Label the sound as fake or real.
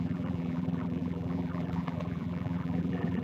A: fake